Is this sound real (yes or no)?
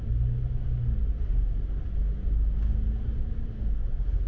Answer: yes